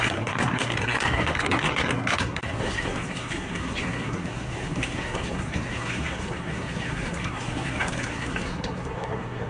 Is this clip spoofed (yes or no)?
yes